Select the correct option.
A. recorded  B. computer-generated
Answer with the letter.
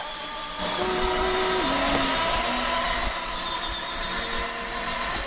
A